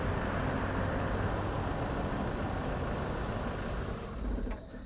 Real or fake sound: real